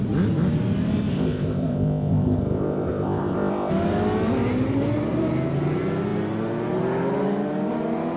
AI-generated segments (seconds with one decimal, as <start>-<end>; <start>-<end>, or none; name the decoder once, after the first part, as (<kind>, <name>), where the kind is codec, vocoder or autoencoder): 1.1-3.7 (codec, ZipCodec)

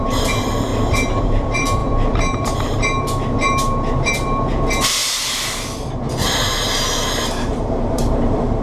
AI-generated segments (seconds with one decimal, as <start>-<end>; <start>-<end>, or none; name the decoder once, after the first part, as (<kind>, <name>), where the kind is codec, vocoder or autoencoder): 0.0-0.7 (vocoder, BigVGAN v2); 1.2-5.0; 6.1-8.6

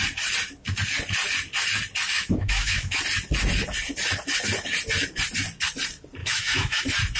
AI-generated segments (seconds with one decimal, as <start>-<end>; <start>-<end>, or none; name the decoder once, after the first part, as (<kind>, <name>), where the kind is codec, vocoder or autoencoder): 2.1-3.0 (autoencoder, DAC-VAE); 6.2-6.8

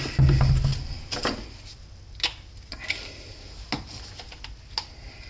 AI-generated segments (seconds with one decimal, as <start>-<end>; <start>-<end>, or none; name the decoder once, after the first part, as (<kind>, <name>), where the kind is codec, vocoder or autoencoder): none

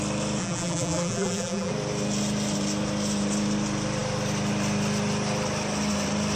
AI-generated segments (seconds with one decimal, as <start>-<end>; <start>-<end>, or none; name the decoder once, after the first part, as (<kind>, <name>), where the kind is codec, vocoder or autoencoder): 0.4-1.7 (vocoder, BigVGAN v2)

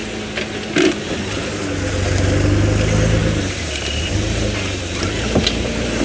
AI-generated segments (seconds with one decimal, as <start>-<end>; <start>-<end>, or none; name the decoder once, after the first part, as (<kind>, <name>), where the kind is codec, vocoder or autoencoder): 3.2-6.0 (vocoder, BigVGAN v2)

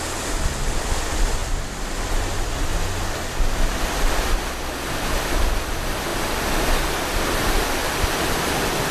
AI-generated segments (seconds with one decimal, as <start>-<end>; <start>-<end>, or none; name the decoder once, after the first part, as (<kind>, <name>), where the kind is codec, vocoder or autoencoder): 0.0-1.4 (vocoder, BigVGAN v2); 2.1-2.7; 5.6-8.9